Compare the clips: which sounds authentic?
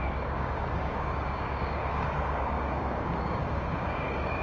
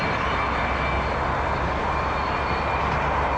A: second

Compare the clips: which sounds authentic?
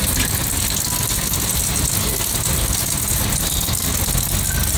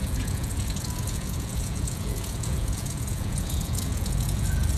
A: first